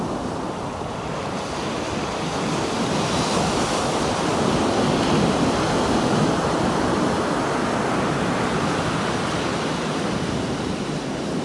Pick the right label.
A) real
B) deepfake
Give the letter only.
A